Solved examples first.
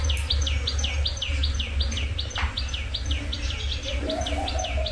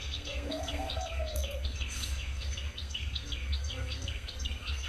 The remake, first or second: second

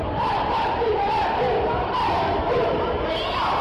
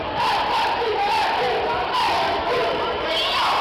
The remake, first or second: first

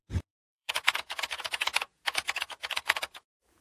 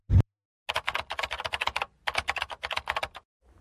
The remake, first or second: first